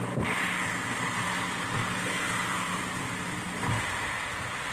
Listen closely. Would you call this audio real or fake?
real